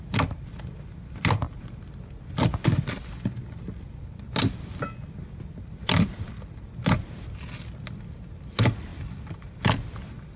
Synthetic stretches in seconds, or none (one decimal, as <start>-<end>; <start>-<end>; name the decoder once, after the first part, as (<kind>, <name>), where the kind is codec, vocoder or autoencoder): 8.9-9.6 (vocoder, BigVGAN v2)

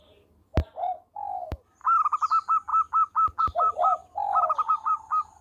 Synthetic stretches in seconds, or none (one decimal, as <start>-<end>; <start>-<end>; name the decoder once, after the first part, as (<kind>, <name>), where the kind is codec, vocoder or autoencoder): 0.0-0.5 (vocoder, BigVGAN v2); 2.3-4.0; 4.7-5.4

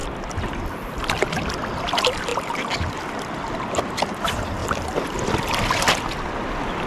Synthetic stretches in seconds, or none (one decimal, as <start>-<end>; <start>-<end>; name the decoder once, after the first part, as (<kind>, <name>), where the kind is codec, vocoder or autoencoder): none

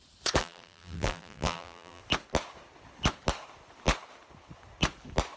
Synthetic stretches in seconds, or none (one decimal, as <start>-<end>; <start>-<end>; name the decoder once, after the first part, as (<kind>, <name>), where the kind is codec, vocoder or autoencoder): 0.4-2.0 (vocoder, BigVGAN v2)

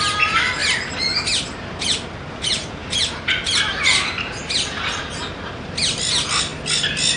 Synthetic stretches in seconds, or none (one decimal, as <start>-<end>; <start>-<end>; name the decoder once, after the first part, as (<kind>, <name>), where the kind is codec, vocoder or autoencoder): 0.0-0.6 (vocoder, BigVGAN v2); 2.3-6.5

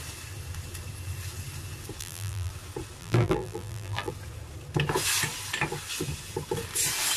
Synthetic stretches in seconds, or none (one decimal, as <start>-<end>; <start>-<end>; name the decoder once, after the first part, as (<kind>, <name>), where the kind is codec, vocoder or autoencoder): 2.0-2.5 (vocoder, BigVGAN v2); 3.0-4.1

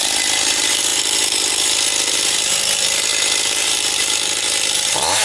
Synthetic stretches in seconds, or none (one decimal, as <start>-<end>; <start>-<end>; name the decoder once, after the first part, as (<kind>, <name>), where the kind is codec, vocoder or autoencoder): 0.0-5.2 (vocoder, BigVGAN v2)